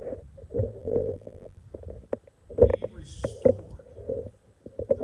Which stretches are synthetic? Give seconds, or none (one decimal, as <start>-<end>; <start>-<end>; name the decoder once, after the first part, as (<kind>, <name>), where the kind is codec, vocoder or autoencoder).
0.8-1.6 (vocoder, BigVGAN v2)